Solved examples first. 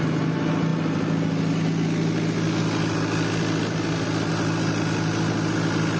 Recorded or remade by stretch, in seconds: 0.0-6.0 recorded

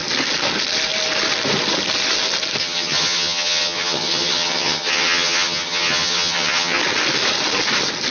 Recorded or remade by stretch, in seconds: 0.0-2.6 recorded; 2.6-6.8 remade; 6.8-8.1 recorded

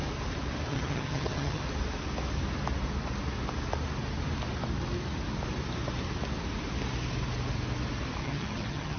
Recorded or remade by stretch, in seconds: 0.0-0.7 recorded; 0.7-1.6 remade; 1.6-8.2 recorded; 8.2-9.0 remade

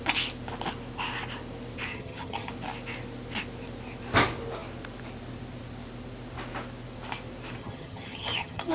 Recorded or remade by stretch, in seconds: 0.0-1.9 recorded; 1.9-2.5 remade; 2.5-7.6 recorded; 7.6-8.7 remade

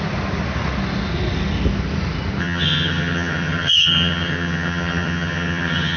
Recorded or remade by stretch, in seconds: 0.0-2.4 recorded; 2.4-6.0 remade

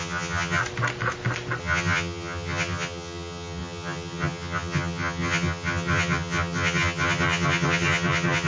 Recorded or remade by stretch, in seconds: 0.0-0.6 remade; 0.6-1.6 recorded; 1.6-8.5 remade

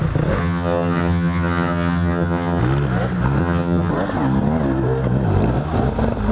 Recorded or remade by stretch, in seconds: 0.0-0.4 recorded; 0.4-2.6 remade; 2.6-3.4 recorded; 3.4-3.9 remade; 3.9-6.3 recorded

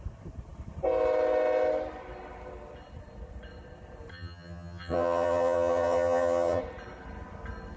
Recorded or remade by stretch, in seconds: 0.0-4.1 recorded; 4.1-6.6 remade; 6.6-7.8 recorded